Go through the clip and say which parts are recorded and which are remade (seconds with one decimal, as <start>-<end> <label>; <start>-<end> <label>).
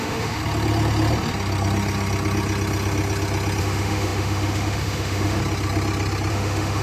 0.0-0.4 remade; 0.4-3.6 recorded; 3.6-5.4 remade; 5.4-6.3 recorded; 6.3-6.8 remade